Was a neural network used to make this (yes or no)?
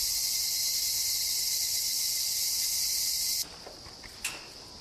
no